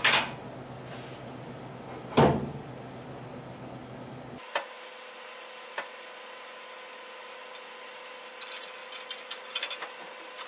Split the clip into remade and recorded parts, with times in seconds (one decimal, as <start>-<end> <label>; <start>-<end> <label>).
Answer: 0.0-10.5 recorded